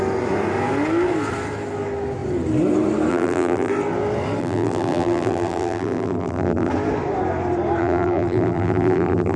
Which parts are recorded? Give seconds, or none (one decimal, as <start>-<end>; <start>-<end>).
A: 0.0-3.1; 3.7-4.4; 6.7-7.8